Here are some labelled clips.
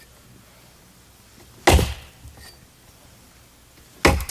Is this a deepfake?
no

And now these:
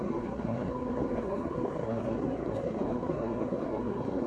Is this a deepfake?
yes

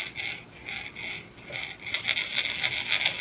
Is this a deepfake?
no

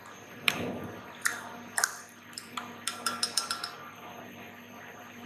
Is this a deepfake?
yes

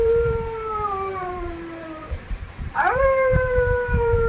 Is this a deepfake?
yes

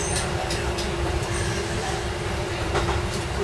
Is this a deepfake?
yes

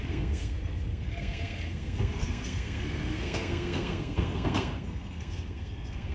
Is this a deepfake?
yes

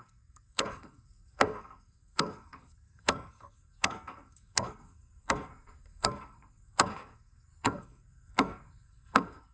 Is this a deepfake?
yes